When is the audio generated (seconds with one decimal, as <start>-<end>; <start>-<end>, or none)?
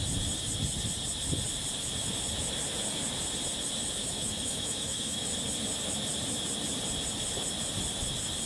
4.0-5.3